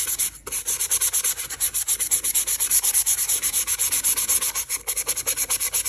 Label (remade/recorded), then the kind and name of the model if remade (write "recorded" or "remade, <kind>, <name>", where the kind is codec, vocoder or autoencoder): recorded